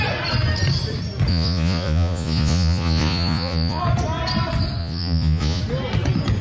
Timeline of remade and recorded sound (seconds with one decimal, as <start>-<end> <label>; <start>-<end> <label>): 0.0-1.3 recorded; 1.3-3.8 remade; 3.8-4.8 recorded; 4.8-5.6 remade; 5.6-6.4 recorded